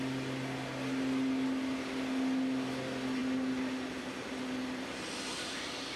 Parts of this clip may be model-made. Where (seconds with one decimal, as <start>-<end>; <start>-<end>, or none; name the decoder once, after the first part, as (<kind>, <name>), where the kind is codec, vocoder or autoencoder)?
none